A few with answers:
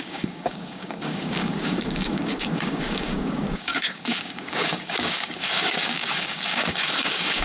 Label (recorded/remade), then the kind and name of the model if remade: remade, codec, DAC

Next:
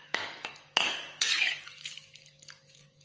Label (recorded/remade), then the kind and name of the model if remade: remade, codec, DAC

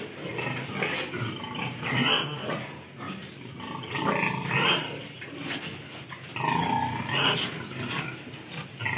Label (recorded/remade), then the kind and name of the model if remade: recorded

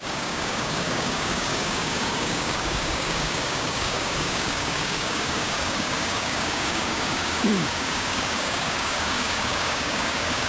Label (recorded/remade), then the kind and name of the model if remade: remade, codec, DAC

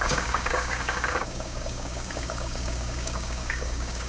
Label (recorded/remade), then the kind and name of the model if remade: remade, codec, DAC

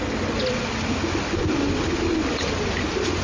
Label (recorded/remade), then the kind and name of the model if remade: recorded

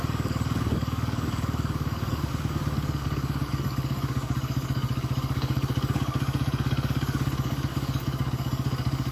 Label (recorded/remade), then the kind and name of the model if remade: remade, codec, DAC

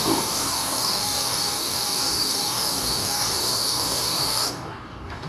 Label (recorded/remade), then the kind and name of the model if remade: remade, codec, DAC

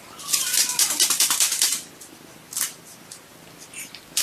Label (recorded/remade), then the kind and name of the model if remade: recorded